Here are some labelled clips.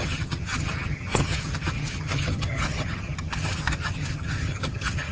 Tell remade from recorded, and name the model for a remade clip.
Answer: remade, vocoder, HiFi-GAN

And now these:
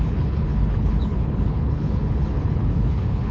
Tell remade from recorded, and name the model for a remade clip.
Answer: remade, codec, HILCodec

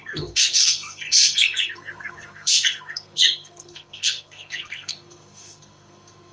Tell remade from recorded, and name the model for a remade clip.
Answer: remade, codec, SNAC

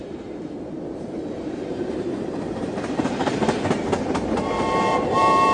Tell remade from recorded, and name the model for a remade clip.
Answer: remade, vocoder, BigVGAN v2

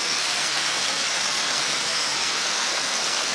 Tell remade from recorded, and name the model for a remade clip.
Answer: remade, codec, SNAC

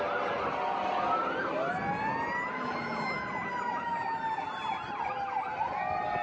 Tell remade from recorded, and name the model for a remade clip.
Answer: recorded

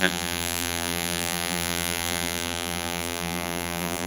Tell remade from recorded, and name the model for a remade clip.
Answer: remade, vocoder, BigVGAN v2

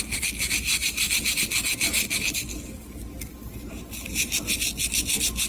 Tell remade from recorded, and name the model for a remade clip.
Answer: recorded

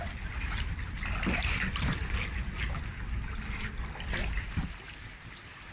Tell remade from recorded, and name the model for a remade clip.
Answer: recorded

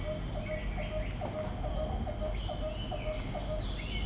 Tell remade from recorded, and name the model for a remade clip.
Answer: recorded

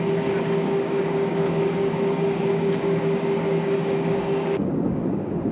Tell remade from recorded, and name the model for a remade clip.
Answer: remade, codec, DAC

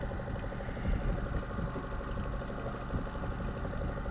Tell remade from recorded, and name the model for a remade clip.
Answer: recorded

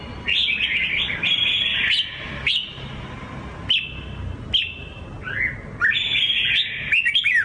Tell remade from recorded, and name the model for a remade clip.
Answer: recorded